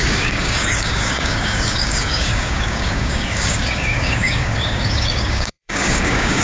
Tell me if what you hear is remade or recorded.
remade